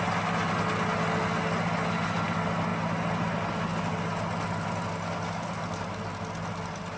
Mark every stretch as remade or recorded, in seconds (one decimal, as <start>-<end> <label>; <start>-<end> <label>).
0.0-7.0 recorded